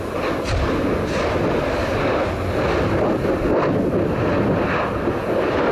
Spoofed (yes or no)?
no